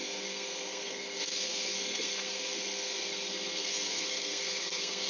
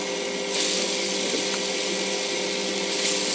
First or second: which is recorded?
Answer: second